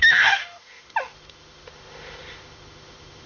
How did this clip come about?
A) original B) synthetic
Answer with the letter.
B